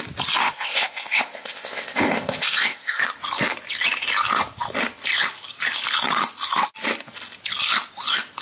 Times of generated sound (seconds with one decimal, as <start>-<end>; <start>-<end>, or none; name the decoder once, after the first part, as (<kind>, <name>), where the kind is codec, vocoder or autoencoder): 0.4-3.0 (codec, ZipCodec)